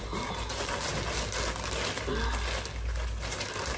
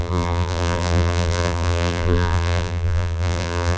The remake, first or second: second